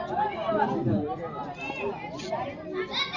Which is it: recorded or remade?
recorded